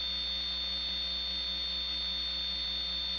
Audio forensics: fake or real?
real